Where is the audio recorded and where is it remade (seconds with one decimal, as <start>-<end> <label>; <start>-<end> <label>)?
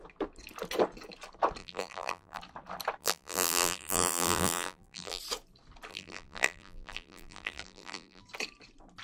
0.0-1.6 recorded; 1.6-2.4 remade; 2.4-3.0 recorded; 3.0-5.2 remade; 5.2-5.9 recorded; 5.9-8.2 remade; 8.2-9.0 recorded